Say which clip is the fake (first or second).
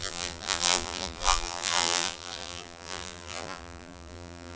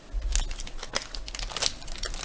first